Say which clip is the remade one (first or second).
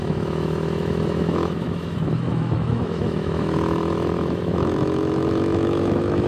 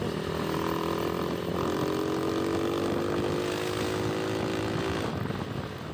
first